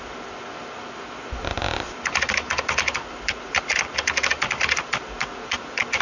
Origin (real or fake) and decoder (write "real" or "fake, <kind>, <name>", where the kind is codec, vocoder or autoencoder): real